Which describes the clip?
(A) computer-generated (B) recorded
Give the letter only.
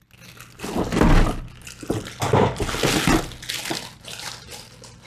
B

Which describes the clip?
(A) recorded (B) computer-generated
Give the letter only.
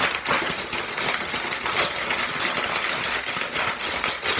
A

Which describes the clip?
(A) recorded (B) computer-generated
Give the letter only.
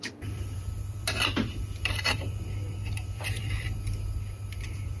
B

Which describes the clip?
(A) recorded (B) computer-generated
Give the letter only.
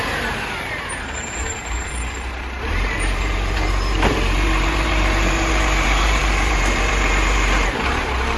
B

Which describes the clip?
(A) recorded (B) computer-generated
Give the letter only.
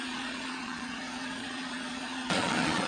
B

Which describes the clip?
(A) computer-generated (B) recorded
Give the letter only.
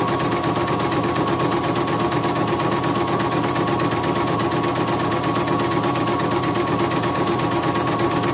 B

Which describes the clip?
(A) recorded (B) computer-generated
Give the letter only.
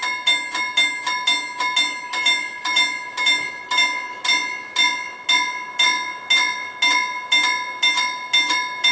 A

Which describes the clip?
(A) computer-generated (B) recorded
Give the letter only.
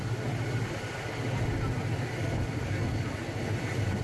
B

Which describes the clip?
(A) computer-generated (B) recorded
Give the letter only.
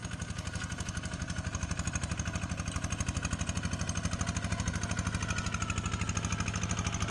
B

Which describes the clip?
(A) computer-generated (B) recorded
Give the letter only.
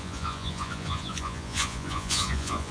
A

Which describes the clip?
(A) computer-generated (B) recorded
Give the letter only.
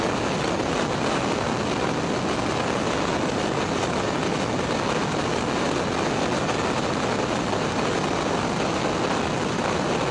B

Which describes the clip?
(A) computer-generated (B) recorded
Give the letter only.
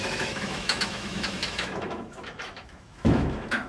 A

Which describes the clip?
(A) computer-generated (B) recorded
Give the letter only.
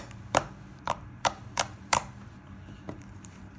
A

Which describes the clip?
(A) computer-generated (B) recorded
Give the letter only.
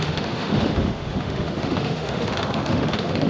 A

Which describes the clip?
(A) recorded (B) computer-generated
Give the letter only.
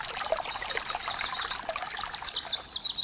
A